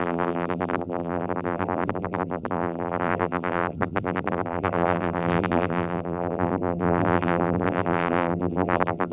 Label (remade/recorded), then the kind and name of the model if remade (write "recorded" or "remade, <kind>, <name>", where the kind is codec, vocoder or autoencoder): remade, vocoder, BigVGAN v2